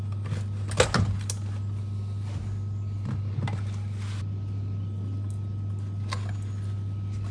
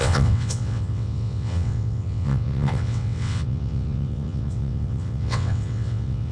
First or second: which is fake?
second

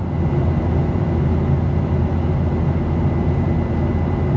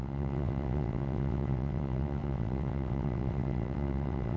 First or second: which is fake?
second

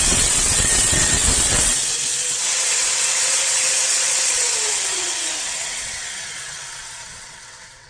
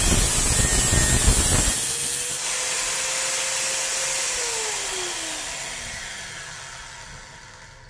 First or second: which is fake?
first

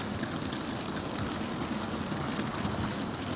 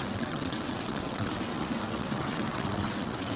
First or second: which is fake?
second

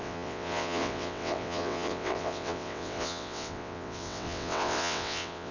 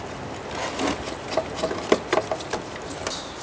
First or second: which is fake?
first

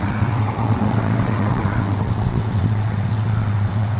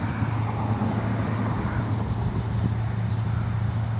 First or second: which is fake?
first